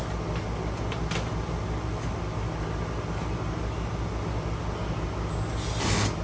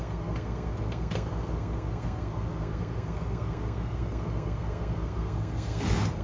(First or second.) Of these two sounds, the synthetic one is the second